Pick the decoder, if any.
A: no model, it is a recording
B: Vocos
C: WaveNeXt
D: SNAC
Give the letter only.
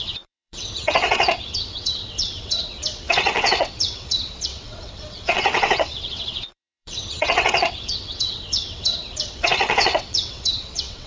C